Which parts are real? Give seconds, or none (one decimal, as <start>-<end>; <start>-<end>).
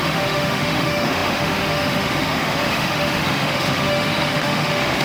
none